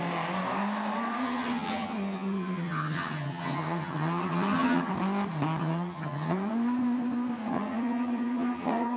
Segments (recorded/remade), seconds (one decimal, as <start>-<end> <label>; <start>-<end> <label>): 0.0-1.2 recorded; 1.2-4.9 remade; 4.9-5.6 recorded; 5.6-6.5 remade; 6.5-7.5 recorded; 7.5-9.0 remade